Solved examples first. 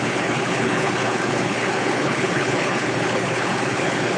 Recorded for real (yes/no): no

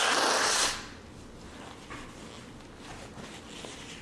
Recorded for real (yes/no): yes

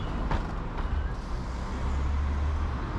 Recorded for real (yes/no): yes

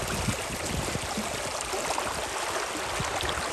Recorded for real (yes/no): yes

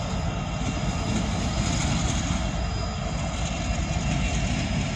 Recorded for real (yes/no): yes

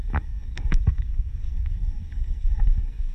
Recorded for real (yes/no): no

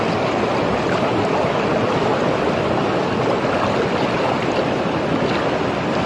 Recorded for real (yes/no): yes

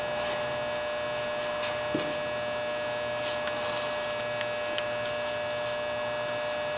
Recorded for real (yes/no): yes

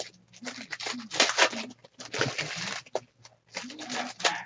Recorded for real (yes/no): yes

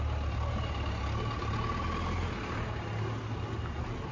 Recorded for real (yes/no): yes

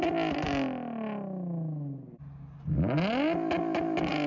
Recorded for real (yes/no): yes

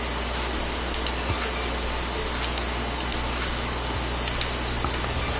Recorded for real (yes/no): yes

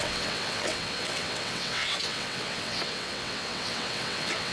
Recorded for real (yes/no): no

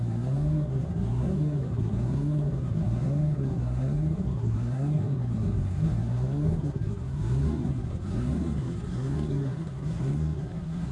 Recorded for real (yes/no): no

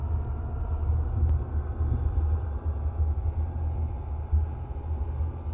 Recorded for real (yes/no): yes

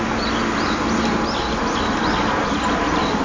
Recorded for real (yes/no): yes